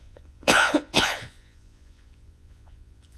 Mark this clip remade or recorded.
remade